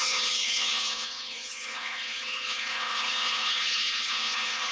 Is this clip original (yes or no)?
no